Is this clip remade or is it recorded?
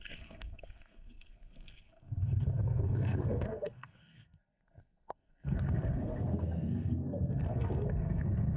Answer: remade